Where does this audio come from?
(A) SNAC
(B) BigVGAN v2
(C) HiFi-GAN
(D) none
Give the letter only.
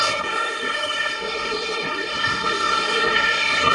A